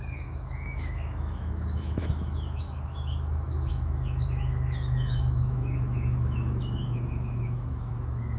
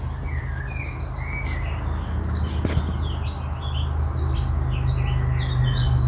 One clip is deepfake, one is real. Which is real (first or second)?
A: second